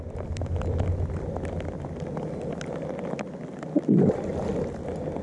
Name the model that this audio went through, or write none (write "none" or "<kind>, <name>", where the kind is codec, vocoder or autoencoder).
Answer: none